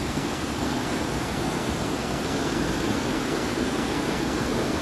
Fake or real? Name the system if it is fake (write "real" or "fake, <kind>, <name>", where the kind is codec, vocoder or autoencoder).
fake, codec, SNAC